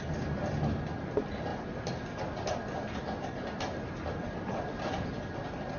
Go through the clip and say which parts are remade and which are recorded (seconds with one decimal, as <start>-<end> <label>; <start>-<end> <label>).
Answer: 0.0-5.8 recorded